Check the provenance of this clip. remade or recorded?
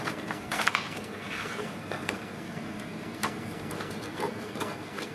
remade